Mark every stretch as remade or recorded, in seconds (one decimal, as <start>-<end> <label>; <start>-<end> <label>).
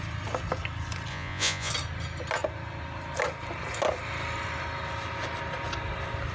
0.0-1.1 recorded; 1.1-1.7 remade; 1.7-6.3 recorded